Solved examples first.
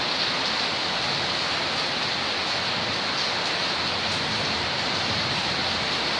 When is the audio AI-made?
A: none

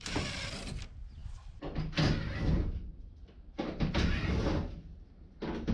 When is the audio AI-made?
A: none

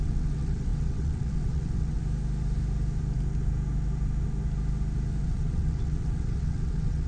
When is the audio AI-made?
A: 0.0-2.0 (vocoder, WaveNeXt); 5.2-7.1

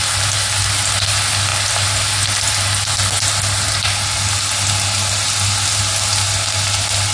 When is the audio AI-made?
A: none